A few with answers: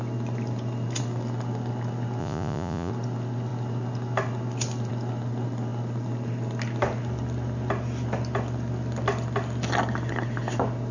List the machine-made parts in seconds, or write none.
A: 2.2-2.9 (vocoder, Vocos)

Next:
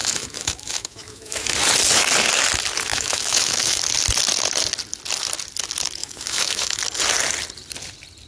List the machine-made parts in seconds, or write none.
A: 0.0-1.5 (autoencoder, DAC-VAE); 2.9-3.8; 6.0-6.8

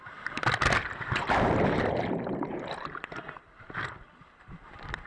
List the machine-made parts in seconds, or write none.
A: 0.8-3.9 (vocoder, BigVGAN v2)